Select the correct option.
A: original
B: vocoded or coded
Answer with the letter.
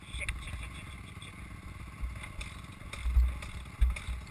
A